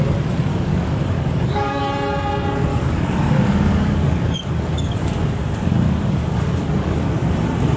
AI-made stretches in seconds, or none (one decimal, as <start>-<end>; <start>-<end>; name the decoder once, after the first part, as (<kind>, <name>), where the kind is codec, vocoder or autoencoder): 0.5-1.8 (codec, DAC); 2.7-7.0